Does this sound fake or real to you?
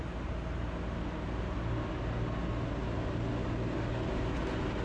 real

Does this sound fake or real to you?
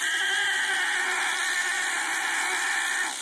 real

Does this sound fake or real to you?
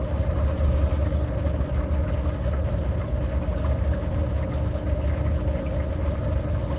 real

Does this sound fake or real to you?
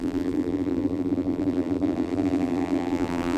fake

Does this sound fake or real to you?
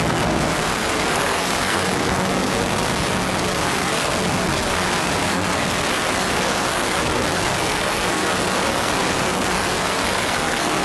fake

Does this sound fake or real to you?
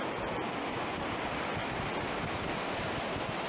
real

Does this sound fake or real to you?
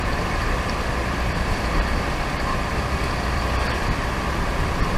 fake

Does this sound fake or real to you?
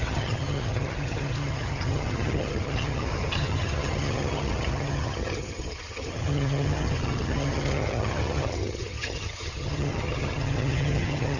fake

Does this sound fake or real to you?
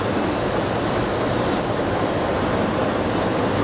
real